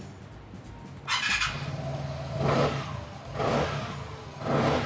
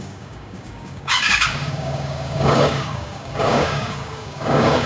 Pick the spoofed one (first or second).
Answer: second